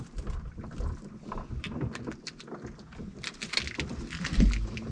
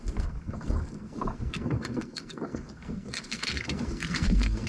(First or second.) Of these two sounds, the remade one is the second